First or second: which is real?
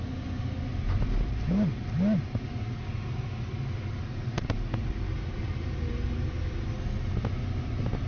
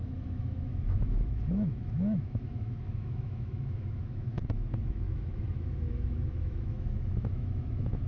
first